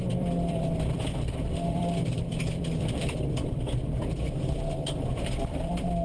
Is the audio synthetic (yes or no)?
yes